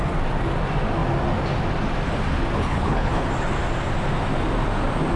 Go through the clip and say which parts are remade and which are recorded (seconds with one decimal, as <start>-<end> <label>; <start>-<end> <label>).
0.0-2.6 recorded; 2.6-3.3 remade; 3.3-5.2 recorded